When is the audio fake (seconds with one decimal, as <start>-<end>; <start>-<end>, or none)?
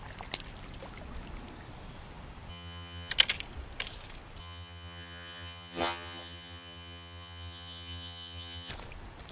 2.5-3.1; 4.4-8.7